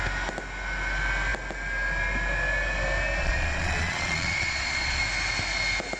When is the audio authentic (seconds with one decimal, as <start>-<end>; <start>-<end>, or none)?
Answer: 0.0-3.2; 5.0-6.0